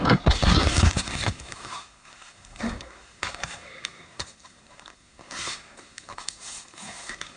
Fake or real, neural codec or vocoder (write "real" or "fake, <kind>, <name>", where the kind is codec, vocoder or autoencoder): fake, codec, SNAC